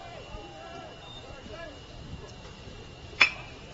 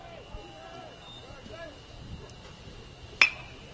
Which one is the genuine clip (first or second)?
second